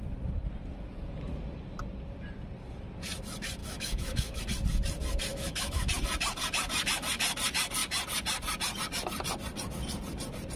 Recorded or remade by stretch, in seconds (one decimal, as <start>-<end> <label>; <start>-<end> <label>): 0.0-3.6 recorded; 3.6-4.4 remade; 4.4-5.3 recorded; 5.3-5.9 remade; 5.9-10.6 recorded